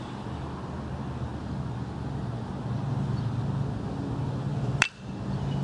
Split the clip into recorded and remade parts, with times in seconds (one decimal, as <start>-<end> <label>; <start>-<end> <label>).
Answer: 0.0-5.6 recorded